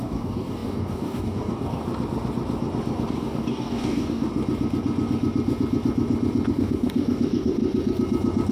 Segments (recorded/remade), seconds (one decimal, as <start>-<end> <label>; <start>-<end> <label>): 0.0-1.8 remade; 1.8-3.1 recorded; 3.1-4.3 remade; 4.3-6.5 recorded; 6.5-7.6 remade; 7.6-8.5 recorded